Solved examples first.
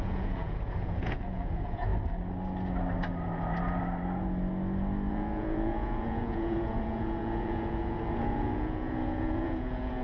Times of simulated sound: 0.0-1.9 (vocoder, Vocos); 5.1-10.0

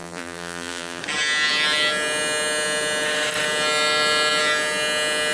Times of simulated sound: 0.0-1.0 (vocoder, BigVGAN v2)

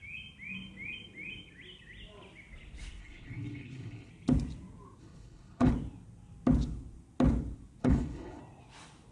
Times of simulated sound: 3.0-4.1 (codec, HILCodec); 5.0-5.7; 7.8-8.4

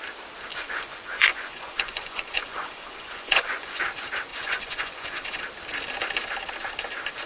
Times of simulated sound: 0.5-3.8 (vocoder, Vocos); 4.3-5.4

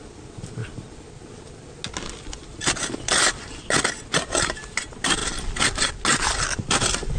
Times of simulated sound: none

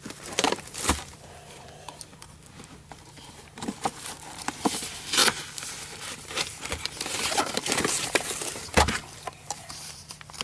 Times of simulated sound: 0.0-2.1 (vocoder, BigVGAN v2); 2.9-5.2; 5.7-10.4

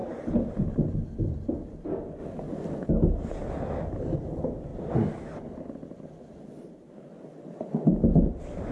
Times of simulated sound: none

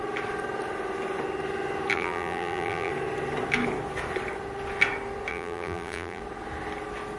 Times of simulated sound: 1.9-2.9 (vocoder, BigVGAN v2); 5.3-6.2